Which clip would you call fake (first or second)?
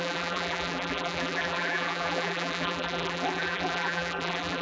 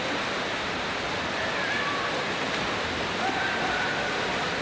first